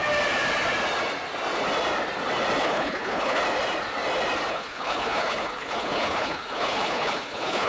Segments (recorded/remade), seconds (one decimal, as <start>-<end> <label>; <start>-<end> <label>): 0.0-2.6 recorded; 2.6-3.4 remade; 3.4-4.5 recorded; 4.5-7.7 remade